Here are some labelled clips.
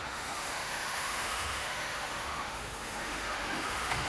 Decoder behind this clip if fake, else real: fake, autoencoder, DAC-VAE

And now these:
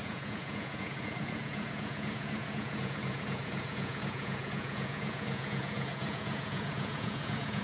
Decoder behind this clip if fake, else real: fake, vocoder, Vocos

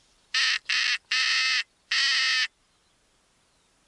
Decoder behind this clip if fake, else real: real